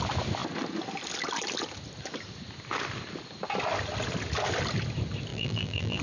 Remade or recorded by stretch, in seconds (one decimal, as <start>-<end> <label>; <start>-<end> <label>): 0.0-5.3 recorded; 5.3-6.0 remade